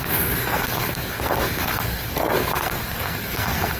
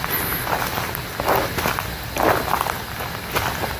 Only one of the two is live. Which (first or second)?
second